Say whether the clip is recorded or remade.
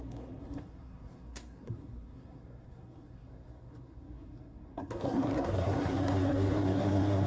remade